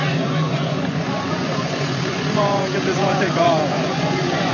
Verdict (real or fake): fake